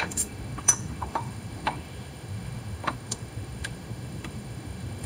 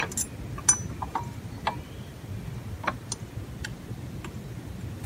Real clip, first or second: second